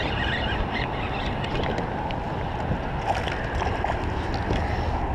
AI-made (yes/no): no